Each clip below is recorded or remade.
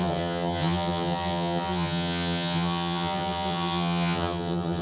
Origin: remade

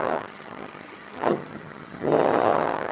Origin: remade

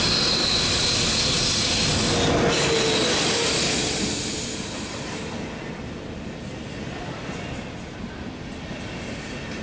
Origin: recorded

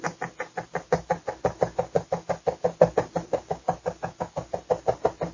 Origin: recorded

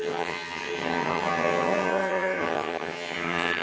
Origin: remade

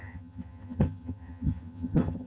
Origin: remade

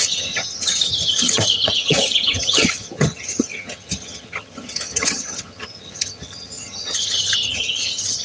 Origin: remade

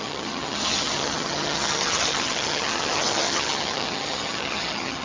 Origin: remade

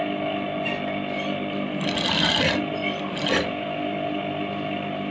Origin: recorded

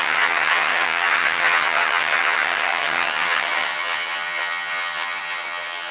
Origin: remade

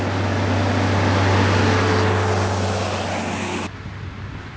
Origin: recorded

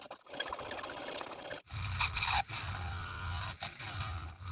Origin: recorded